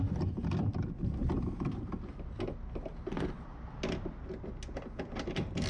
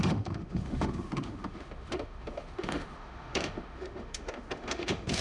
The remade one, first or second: second